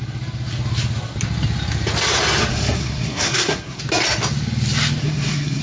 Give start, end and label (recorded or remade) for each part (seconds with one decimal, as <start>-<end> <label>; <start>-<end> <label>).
0.0-2.5 recorded; 2.5-3.8 remade; 3.8-5.0 recorded; 5.0-5.6 remade